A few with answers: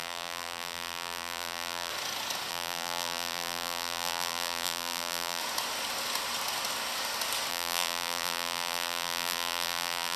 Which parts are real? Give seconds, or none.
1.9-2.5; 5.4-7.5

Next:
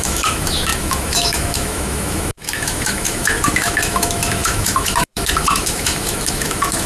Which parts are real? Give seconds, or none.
none